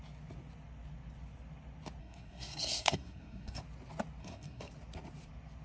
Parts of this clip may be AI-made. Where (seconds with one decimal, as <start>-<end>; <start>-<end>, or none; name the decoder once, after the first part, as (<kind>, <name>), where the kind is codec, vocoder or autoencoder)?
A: 2.0-3.6 (codec, SNAC); 4.2-4.7